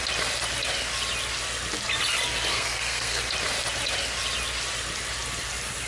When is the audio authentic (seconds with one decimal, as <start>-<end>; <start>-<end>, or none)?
0.0-2.5; 3.2-5.9